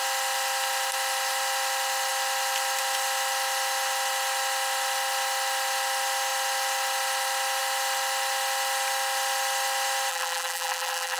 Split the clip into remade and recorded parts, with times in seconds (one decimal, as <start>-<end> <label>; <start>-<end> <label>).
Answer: 0.0-10.1 recorded; 10.1-11.2 remade